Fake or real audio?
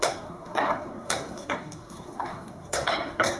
fake